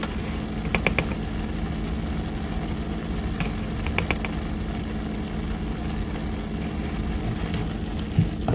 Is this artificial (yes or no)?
no